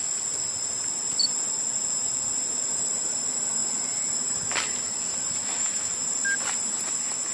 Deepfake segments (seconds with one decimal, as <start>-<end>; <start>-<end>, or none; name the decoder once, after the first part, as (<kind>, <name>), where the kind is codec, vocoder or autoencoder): 5.4-6.0 (autoencoder, DAC-VAE)